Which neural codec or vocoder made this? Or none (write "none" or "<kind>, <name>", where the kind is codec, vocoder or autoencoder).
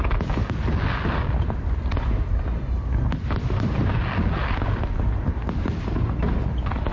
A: none